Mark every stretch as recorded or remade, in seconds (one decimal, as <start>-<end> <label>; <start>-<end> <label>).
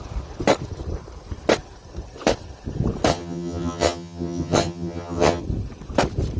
0.0-3.1 recorded; 3.1-5.4 remade; 5.4-6.4 recorded